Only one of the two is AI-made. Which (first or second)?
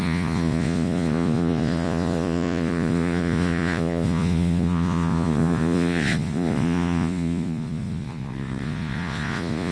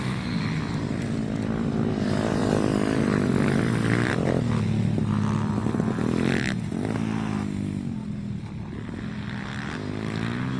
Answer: first